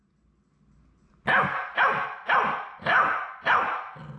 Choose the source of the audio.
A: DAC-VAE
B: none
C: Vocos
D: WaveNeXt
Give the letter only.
B